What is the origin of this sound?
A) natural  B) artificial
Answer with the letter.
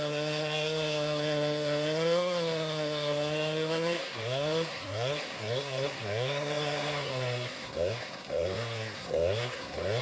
B